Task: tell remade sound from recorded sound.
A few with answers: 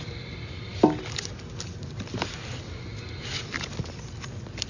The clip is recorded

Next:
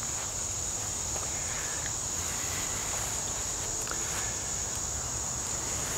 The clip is recorded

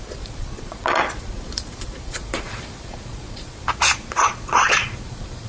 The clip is remade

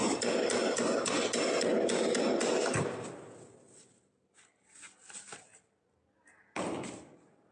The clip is recorded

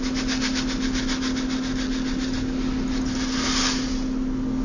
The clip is recorded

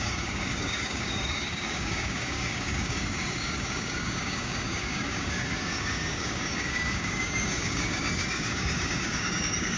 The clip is remade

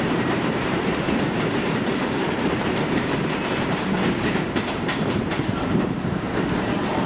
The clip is remade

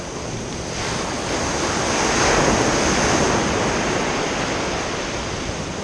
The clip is recorded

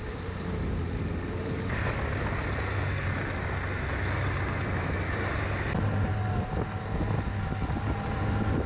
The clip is recorded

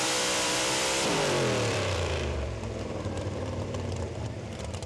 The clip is remade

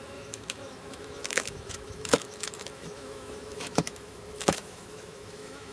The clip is remade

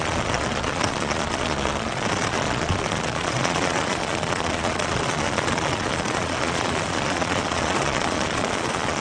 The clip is remade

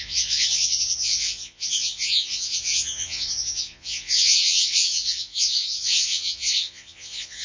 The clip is remade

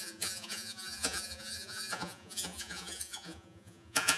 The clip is remade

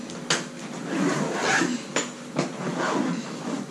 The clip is recorded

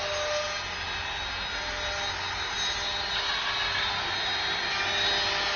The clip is recorded